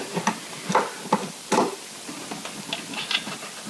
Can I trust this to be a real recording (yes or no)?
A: yes